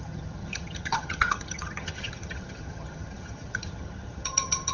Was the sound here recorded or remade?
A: remade